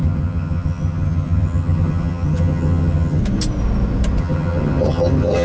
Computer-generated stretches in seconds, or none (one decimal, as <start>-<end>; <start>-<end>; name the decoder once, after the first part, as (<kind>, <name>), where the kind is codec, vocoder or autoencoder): 0.0-3.2 (vocoder, HiFi-GAN); 4.2-5.4